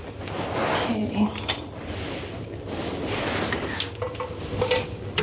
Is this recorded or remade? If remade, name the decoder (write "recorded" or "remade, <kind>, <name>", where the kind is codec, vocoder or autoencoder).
recorded